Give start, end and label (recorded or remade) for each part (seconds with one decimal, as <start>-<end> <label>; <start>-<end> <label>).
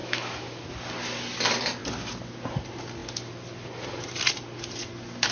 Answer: 0.0-0.7 remade; 0.7-5.3 recorded